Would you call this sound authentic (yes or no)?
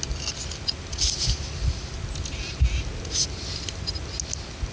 yes